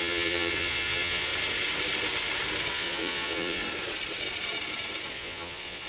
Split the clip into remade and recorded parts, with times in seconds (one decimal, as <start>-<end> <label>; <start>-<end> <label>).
0.0-1.3 remade; 1.3-2.7 recorded; 2.7-3.6 remade; 3.6-5.1 recorded; 5.1-5.9 remade

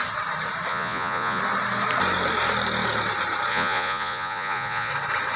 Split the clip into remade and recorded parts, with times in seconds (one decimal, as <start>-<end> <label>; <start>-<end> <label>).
0.0-0.7 recorded; 0.7-1.4 remade; 1.4-3.5 recorded; 3.5-4.9 remade; 4.9-5.4 recorded

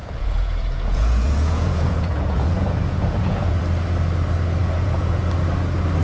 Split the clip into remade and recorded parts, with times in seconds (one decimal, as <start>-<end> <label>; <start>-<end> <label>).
0.0-3.6 remade; 3.6-4.6 recorded; 4.6-5.3 remade; 5.3-6.0 recorded

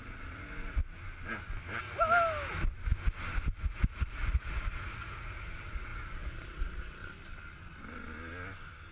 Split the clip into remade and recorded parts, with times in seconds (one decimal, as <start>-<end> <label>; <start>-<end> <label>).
0.0-0.8 remade; 0.8-3.6 recorded; 3.6-7.0 remade; 7.0-8.9 recorded

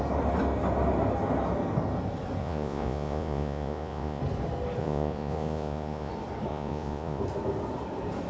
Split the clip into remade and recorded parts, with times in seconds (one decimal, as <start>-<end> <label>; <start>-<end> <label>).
0.0-2.4 recorded; 2.4-4.2 remade; 4.2-4.8 recorded; 4.8-6.1 remade; 6.1-6.5 recorded; 6.5-7.2 remade; 7.2-8.3 recorded